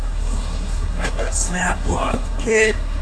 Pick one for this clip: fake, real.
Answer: fake